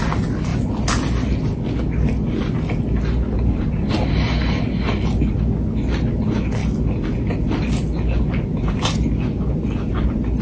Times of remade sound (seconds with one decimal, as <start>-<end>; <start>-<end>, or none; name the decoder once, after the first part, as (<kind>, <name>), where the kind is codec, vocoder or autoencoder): none